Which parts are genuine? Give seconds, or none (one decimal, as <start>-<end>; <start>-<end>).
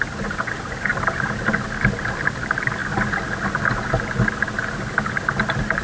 0.0-5.8